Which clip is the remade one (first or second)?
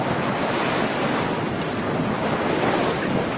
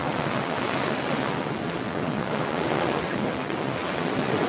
second